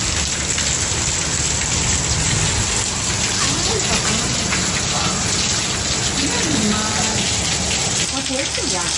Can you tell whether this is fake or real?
real